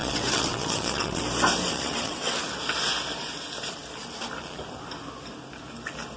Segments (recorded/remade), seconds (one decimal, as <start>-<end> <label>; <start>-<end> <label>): 0.0-1.2 remade; 1.2-1.7 recorded; 1.7-2.4 remade; 2.4-6.2 recorded